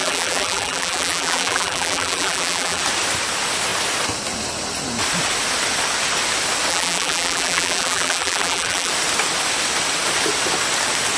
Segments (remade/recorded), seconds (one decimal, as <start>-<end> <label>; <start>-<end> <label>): 0.0-2.8 remade; 2.8-6.7 recorded; 6.7-8.9 remade; 8.9-11.2 recorded